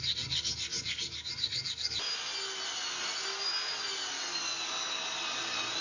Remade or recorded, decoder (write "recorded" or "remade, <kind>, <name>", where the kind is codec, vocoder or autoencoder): recorded